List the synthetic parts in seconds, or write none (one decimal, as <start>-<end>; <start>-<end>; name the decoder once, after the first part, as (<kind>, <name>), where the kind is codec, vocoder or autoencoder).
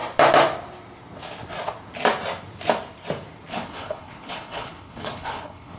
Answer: 3.5-5.8 (codec, HILCodec)